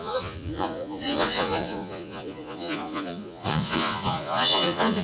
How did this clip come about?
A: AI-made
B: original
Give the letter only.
A